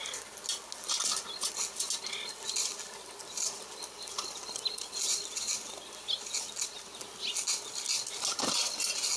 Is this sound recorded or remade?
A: recorded